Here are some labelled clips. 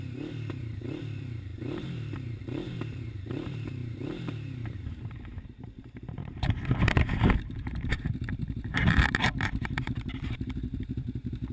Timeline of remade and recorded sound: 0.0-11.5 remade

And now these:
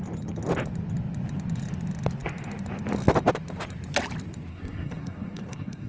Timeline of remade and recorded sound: 0.0-4.5 recorded; 4.5-5.9 remade

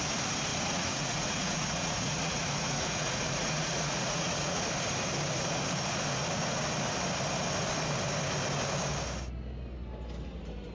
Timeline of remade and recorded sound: 0.0-0.5 recorded; 0.5-4.7 remade; 4.7-10.7 recorded